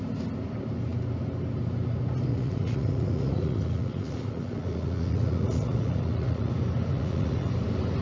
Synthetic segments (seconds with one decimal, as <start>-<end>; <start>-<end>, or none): 2.3-6.5; 6.9-7.5